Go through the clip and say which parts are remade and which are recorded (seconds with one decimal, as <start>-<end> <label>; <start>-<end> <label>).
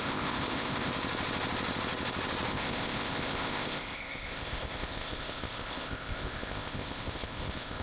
0.0-0.9 remade; 0.9-2.5 recorded; 2.5-7.8 remade